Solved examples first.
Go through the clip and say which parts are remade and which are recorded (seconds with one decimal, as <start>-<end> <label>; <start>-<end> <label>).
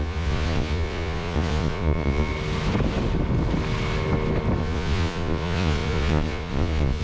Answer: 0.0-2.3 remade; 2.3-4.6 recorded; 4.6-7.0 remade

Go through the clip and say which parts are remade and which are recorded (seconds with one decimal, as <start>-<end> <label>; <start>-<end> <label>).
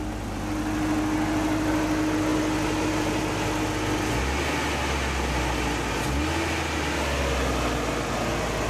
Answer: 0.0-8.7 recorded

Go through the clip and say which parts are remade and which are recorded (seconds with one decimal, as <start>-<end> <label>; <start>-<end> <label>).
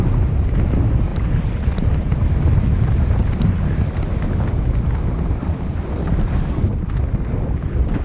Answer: 0.0-8.0 recorded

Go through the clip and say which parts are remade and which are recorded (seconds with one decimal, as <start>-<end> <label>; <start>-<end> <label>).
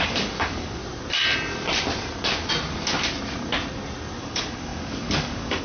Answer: 0.0-0.8 remade; 0.8-4.2 recorded; 4.2-5.6 remade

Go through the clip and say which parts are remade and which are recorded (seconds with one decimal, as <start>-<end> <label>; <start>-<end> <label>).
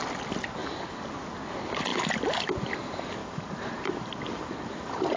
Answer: 0.0-0.6 recorded; 0.6-1.3 remade; 1.3-3.2 recorded; 3.2-4.1 remade; 4.1-5.2 recorded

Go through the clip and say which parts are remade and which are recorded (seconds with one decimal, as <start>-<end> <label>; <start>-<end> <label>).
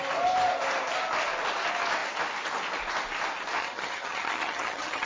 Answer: 0.0-3.6 recorded; 3.6-5.1 remade